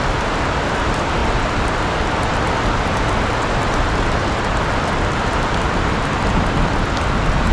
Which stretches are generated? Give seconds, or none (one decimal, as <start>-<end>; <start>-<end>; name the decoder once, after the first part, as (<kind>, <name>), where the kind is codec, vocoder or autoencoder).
none